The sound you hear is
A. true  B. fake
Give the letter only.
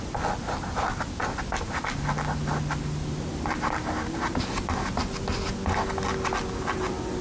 A